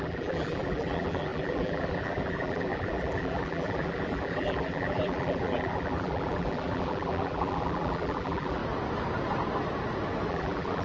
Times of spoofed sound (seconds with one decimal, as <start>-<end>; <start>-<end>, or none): 0.0-8.6; 10.3-10.8